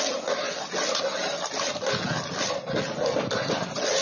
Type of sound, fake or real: real